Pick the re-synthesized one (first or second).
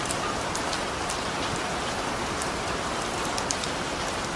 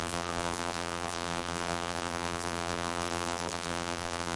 second